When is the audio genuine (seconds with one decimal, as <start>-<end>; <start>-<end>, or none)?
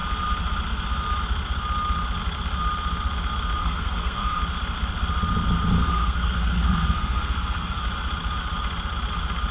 0.0-3.6; 4.4-5.8; 7.8-9.5